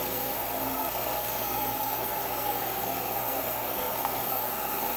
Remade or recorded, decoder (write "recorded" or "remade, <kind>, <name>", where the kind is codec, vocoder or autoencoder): remade, codec, SNAC